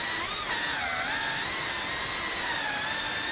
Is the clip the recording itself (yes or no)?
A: yes